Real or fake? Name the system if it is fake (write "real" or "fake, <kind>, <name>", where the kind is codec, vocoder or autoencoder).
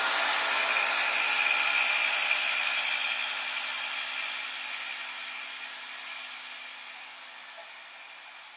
real